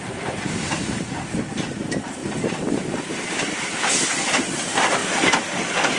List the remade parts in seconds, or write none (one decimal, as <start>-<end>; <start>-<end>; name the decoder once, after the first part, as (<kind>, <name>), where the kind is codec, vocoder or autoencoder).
0.0-5.0 (vocoder, BigVGAN v2)